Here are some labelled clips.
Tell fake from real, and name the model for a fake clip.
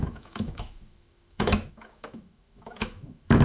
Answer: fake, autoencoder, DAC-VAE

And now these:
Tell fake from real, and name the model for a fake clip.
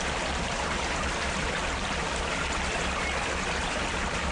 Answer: real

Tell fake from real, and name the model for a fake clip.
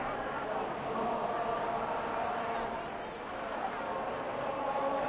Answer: real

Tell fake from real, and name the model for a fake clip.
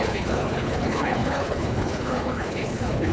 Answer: fake, codec, HILCodec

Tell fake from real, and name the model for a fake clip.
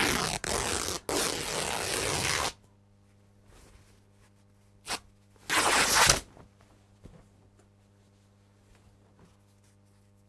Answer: real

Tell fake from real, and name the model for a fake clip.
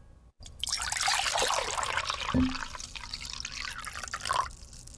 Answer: real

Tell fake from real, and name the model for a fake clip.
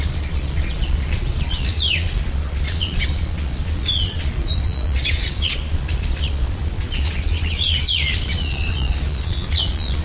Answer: fake, vocoder, Vocos